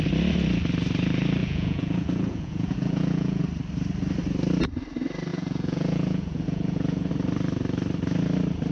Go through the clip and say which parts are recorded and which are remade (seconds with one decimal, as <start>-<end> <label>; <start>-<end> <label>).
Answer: 0.0-1.4 recorded; 1.4-3.4 remade; 3.4-5.3 recorded; 5.3-7.1 remade; 7.1-8.7 recorded